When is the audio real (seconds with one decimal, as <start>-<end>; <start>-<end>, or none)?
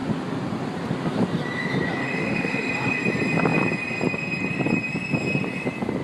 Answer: 0.0-2.0; 2.7-6.0